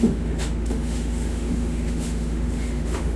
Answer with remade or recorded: remade